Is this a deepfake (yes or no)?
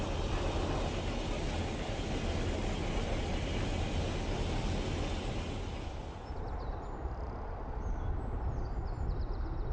no